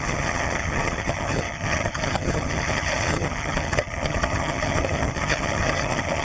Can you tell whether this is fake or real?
fake